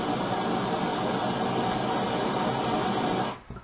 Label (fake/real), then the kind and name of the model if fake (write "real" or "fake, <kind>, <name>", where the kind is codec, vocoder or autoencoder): real